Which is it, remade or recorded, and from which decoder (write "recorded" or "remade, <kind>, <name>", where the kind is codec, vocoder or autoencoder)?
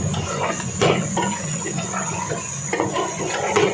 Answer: remade, vocoder, Vocos